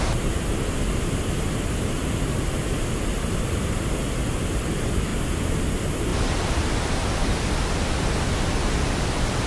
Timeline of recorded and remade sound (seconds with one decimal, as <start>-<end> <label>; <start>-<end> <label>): 0.0-6.1 recorded; 6.1-6.6 remade; 6.6-9.5 recorded